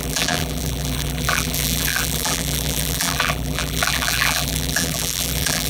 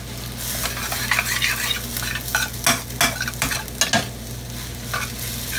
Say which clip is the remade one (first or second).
first